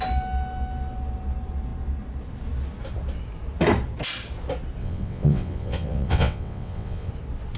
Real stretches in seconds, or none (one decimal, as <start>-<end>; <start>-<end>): 0.0-4.8; 7.1-7.6